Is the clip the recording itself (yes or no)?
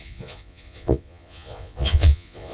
no